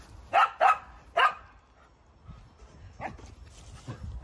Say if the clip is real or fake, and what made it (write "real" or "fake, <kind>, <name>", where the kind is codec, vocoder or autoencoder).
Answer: real